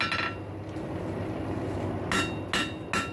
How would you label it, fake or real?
real